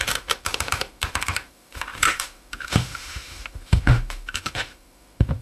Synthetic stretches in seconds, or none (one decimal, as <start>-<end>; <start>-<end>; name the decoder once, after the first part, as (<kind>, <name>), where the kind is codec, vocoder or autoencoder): 0.0-5.4 (autoencoder, DAC-VAE)